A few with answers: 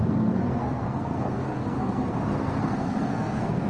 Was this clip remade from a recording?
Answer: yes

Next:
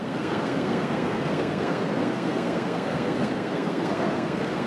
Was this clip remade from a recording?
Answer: yes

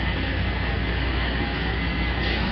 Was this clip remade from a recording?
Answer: yes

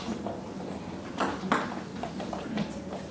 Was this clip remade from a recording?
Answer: no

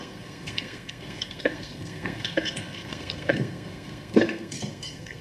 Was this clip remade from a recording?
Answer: yes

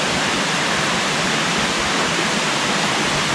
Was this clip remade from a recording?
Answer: no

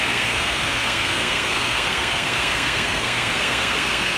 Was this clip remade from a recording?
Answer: yes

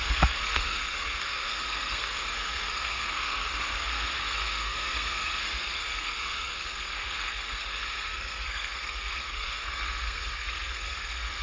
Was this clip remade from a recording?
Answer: yes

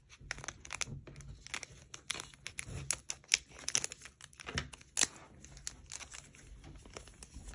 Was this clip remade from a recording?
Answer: no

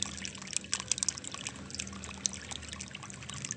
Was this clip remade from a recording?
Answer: no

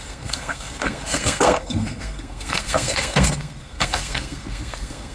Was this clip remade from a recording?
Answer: yes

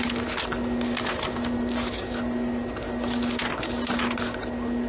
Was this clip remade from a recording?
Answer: no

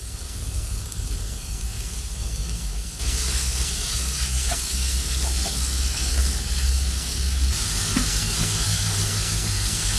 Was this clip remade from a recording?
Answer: yes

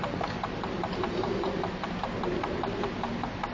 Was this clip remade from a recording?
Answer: no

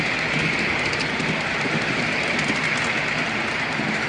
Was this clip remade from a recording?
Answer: no